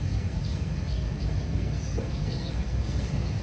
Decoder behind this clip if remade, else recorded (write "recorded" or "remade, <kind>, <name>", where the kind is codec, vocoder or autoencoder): remade, codec, SNAC